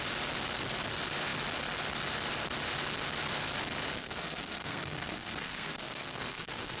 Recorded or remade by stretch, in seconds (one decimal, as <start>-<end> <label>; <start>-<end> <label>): 0.0-4.0 recorded; 4.0-6.8 remade